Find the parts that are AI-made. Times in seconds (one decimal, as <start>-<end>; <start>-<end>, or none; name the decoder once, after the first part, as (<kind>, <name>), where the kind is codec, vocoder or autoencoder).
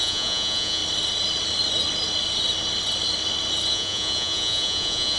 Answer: 0.0-0.8 (vocoder, Vocos); 3.7-5.2